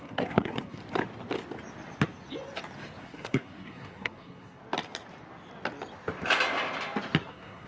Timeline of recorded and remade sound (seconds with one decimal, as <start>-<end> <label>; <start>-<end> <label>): 0.0-0.8 remade; 0.8-3.0 recorded; 3.0-4.6 remade; 4.6-7.3 recorded; 7.3-7.7 remade